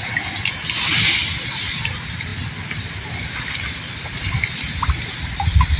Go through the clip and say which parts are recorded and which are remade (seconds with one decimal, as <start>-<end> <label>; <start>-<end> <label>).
0.0-5.8 recorded